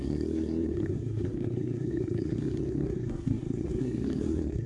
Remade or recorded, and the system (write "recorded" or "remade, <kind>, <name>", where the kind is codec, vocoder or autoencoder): remade, codec, SNAC